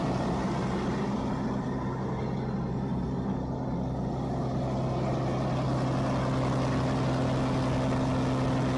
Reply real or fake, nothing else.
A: real